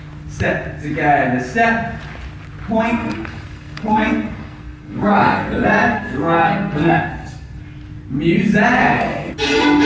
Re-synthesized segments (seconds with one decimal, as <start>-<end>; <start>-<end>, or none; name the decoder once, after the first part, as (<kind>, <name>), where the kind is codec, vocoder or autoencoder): 3.0-7.6 (codec, SNAC); 8.8-9.3